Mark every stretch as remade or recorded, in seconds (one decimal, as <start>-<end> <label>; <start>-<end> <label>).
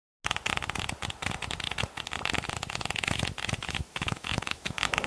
0.0-3.6 recorded; 3.6-5.1 remade